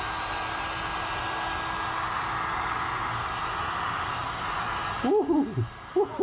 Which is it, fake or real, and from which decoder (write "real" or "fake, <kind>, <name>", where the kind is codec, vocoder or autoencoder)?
real